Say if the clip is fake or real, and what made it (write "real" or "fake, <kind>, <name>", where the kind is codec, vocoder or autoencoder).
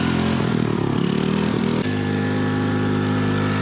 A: real